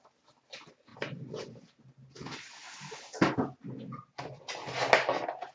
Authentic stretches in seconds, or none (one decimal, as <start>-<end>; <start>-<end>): 0.0-5.5